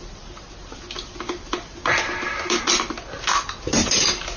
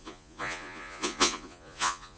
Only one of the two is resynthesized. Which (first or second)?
second